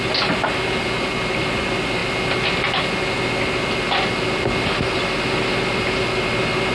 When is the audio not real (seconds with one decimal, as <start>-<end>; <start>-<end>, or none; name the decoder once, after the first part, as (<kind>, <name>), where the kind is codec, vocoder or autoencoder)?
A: none